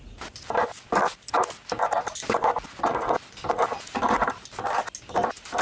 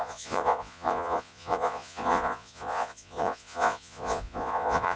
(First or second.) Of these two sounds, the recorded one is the first